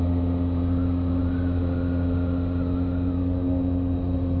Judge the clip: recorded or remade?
recorded